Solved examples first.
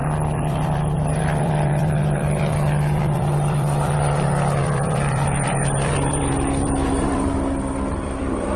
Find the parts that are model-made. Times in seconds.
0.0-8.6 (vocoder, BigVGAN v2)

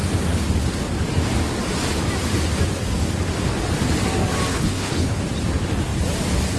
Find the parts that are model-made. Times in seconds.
4.5-5.2 (codec, HILCodec)

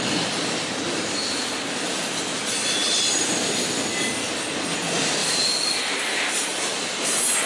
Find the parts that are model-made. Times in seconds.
2.8-3.5 (vocoder, BigVGAN v2); 5.2-6.8

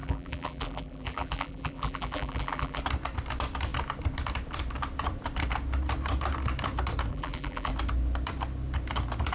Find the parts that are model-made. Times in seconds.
0.0-2.8 (vocoder, BigVGAN v2); 7.1-7.7

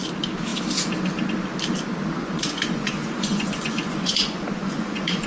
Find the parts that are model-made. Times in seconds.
2.2-5.3 (vocoder, Vocos)

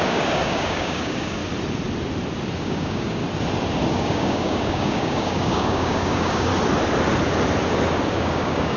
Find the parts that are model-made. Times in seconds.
0.0-1.4 (codec, DAC); 2.6-3.2; 3.9-6.5; 8.1-8.8

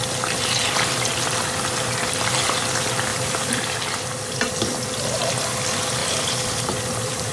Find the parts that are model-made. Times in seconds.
3.1-3.8 (vocoder, BigVGAN v2); 6.0-6.8

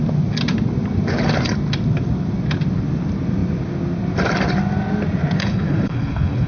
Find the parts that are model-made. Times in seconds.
5.4-6.5 (codec, HILCodec)